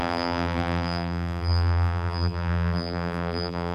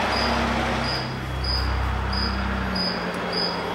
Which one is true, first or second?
second